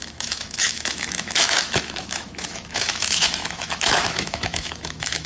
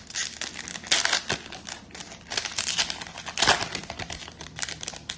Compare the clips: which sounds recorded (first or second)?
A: second